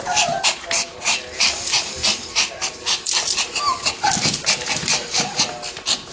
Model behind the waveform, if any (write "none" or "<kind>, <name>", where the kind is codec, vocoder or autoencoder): none